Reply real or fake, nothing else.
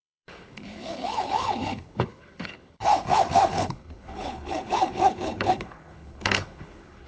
fake